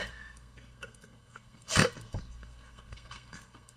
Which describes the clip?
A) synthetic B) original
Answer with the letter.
A